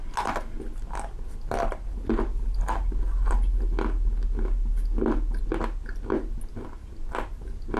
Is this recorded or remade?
recorded